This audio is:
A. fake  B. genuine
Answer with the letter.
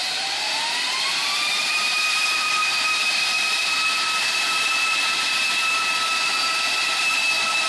A